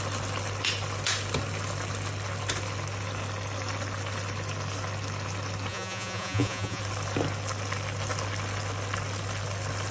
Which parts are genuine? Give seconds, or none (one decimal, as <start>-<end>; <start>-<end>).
0.0-5.7; 6.8-9.9